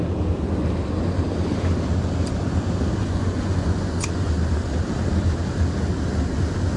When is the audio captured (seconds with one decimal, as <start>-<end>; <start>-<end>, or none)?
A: 0.0-3.0; 4.3-6.8